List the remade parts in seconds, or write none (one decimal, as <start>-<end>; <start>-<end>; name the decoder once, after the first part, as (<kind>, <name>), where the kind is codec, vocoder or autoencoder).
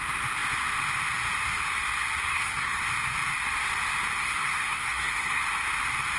2.3-2.8 (codec, SNAC); 4.2-5.4